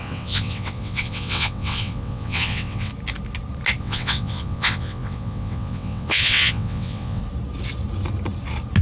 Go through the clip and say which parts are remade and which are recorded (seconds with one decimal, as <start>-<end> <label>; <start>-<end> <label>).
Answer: 0.0-2.9 remade; 2.9-3.8 recorded; 3.8-7.2 remade; 7.2-8.8 recorded